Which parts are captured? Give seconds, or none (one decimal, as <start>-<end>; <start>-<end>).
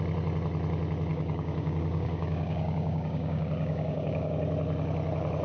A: 0.0-1.1; 4.3-5.4